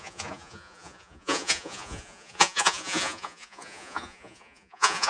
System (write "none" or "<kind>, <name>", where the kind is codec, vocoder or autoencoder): vocoder, Vocos